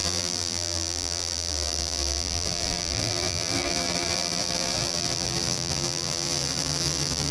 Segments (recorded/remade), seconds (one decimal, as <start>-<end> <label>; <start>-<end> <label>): 0.0-7.3 remade